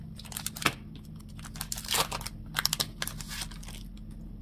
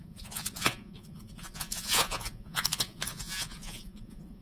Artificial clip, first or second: second